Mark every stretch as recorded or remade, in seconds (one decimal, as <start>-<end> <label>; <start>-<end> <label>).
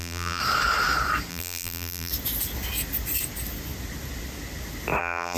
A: 0.0-0.4 remade; 0.4-1.3 recorded; 1.3-2.1 remade; 2.1-5.0 recorded; 5.0-5.4 remade